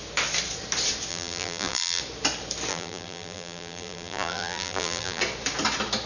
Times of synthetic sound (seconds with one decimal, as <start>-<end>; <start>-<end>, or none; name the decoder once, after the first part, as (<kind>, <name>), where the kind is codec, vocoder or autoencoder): 1.1-2.0 (vocoder, BigVGAN v2); 2.7-5.2